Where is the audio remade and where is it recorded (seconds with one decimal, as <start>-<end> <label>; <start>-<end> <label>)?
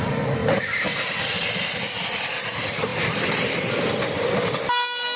0.0-5.2 recorded